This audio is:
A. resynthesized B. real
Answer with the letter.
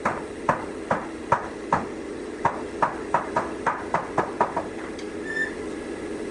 B